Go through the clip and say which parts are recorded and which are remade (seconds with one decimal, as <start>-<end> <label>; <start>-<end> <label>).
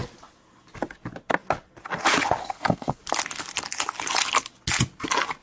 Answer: 0.0-2.4 recorded; 2.4-3.0 remade; 3.0-5.4 recorded